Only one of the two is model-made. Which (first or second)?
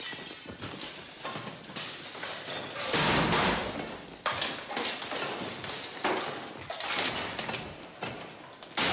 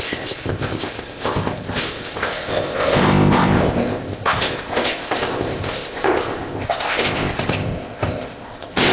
second